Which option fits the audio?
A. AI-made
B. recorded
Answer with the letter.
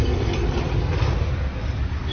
B